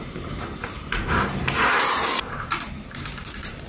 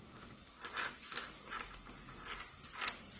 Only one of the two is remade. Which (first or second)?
first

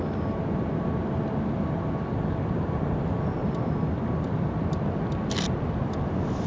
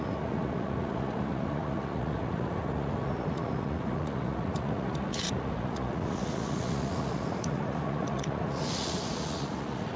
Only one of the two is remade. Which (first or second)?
second